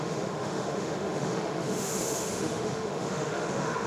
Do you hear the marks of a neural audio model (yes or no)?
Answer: yes